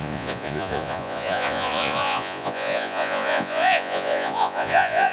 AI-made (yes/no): yes